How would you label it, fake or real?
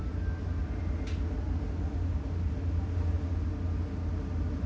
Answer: real